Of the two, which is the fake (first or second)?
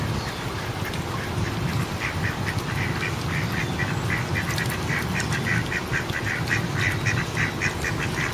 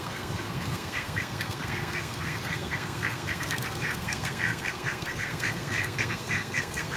second